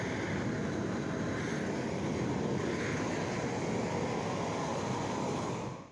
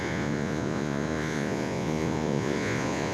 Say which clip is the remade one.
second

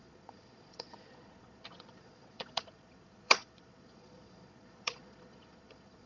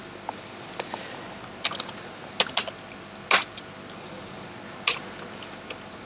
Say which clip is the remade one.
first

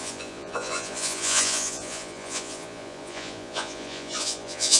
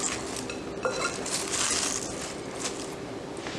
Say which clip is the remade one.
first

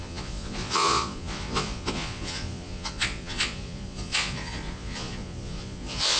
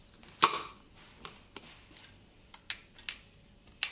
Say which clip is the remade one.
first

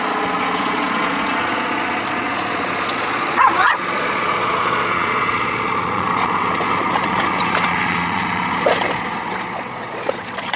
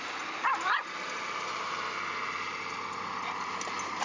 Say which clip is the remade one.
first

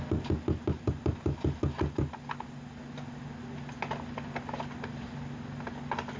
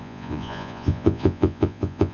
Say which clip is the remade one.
second